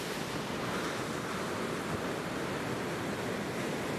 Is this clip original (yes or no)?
yes